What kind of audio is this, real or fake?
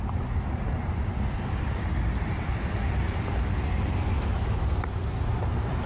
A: real